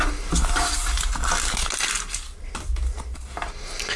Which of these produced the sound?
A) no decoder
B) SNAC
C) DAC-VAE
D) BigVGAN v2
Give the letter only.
A